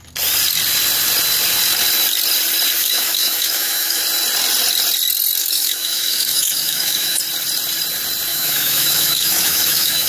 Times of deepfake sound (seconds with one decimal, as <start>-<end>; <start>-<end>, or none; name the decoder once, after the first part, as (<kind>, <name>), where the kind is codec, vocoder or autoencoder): 2.8-4.0 (autoencoder, DAC-VAE); 5.4-7.2; 8.3-10.1